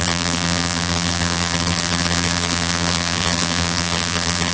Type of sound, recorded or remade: remade